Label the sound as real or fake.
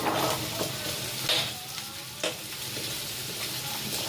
real